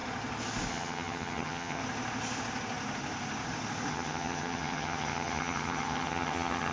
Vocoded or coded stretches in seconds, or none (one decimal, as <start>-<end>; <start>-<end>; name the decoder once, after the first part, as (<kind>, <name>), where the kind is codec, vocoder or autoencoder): 0.7-1.8 (vocoder, HiFi-GAN); 3.9-6.7